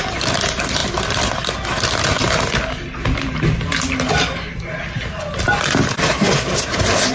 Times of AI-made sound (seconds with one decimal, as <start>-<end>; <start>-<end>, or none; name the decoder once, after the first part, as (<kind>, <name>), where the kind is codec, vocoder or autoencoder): none